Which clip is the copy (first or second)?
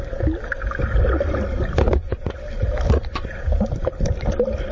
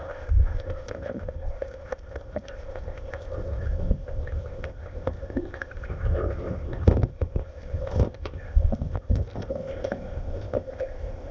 second